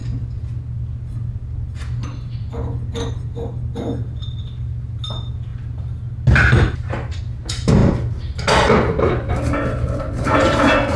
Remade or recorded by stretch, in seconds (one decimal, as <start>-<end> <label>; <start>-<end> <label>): 0.0-11.0 recorded

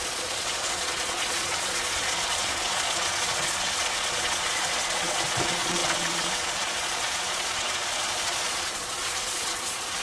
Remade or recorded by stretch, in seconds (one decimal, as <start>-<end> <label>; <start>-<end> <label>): 0.0-10.0 remade